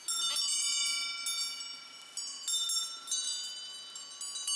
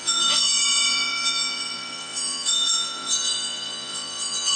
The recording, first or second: first